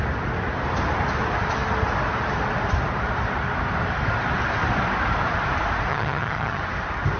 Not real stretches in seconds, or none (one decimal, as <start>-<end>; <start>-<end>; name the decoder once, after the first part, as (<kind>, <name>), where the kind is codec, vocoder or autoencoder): 5.9-6.6 (vocoder, HiFi-GAN)